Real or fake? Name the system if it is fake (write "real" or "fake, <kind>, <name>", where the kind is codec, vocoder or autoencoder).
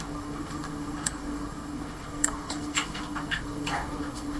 fake, codec, SNAC